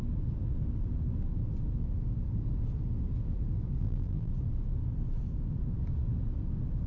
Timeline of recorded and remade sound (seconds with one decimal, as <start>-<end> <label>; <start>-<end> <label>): 0.0-3.8 recorded; 3.8-4.3 remade; 4.3-6.9 recorded